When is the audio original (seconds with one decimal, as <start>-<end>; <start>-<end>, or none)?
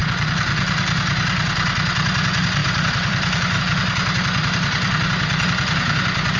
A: 0.0-2.6; 3.6-6.4